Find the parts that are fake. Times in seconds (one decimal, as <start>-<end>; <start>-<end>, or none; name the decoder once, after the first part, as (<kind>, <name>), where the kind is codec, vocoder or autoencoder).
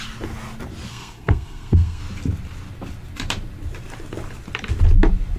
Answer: 0.9-2.0 (codec, SNAC)